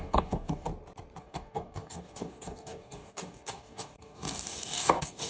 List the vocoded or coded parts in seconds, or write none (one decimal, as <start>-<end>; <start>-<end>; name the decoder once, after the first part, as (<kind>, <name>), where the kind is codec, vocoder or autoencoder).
0.0-0.7 (codec, DAC); 1.2-5.3